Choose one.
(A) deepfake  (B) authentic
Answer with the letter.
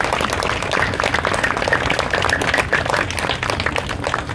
B